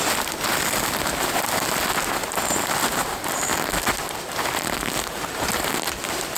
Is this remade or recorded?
recorded